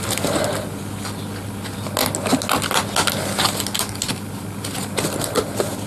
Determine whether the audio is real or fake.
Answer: real